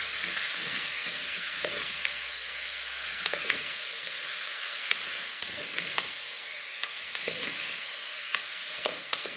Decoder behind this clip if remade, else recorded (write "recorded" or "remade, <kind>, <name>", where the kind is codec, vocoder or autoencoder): remade, codec, SNAC